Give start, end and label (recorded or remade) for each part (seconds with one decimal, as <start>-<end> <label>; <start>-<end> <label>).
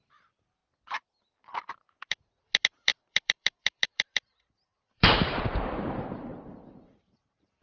0.0-0.6 remade; 0.6-1.8 recorded; 1.8-6.3 remade; 6.3-6.8 recorded; 6.8-7.6 remade